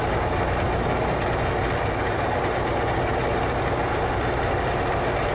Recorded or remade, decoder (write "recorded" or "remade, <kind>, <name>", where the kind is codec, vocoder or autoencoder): recorded